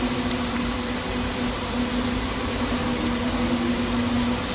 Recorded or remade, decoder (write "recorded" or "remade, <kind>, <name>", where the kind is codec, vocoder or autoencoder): recorded